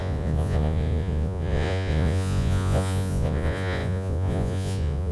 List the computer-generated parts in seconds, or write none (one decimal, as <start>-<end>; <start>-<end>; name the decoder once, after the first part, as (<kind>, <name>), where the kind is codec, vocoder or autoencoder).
0.0-5.1 (vocoder, Vocos)